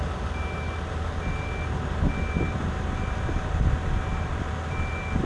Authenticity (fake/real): real